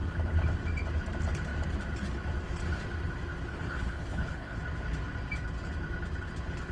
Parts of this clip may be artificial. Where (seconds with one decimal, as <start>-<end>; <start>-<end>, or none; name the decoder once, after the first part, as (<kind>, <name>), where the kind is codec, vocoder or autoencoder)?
3.5-4.6 (codec, HILCodec)